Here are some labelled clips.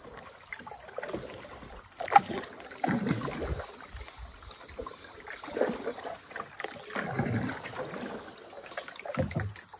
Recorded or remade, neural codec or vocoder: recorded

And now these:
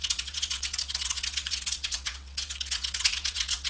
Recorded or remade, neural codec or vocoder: remade, vocoder, WaveNeXt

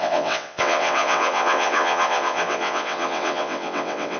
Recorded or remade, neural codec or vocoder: remade, vocoder, WaveNeXt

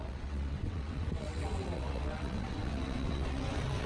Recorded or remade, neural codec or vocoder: remade, vocoder, WaveNeXt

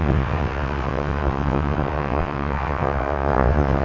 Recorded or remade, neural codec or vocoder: remade, vocoder, WaveNeXt